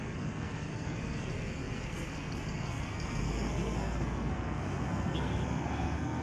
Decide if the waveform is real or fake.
fake